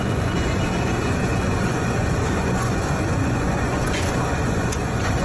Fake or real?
fake